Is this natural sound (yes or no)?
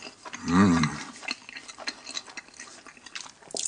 yes